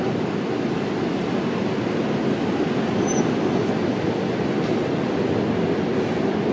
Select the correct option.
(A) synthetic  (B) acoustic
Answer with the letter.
B